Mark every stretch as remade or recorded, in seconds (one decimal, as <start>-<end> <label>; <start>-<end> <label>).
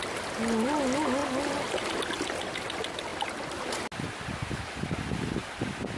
0.0-6.0 recorded